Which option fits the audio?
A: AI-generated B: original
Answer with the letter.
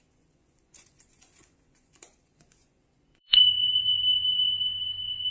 A